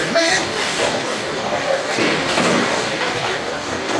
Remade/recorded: remade